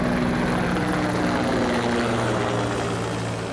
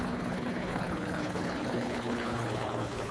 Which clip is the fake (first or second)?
second